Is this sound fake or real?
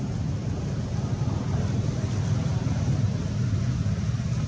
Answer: real